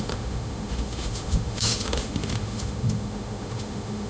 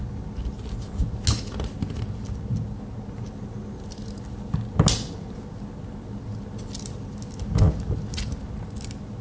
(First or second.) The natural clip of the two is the second